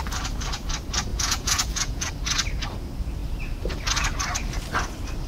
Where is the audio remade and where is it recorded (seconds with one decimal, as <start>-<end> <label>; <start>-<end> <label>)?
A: 0.0-1.1 recorded; 1.1-2.1 remade; 2.1-5.3 recorded